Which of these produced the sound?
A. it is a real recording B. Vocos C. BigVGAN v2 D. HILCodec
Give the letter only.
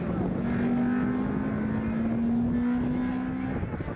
A